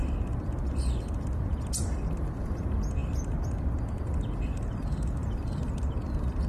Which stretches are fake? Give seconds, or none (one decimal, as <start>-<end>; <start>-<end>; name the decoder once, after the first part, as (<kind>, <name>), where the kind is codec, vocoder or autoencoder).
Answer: none